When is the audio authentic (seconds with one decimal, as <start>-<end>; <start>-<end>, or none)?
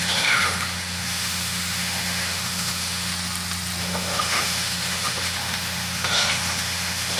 3.1-3.8